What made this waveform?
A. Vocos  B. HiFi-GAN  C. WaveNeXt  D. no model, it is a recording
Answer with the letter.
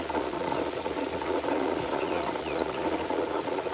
A